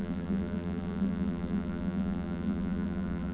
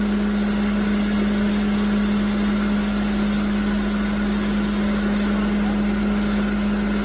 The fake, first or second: first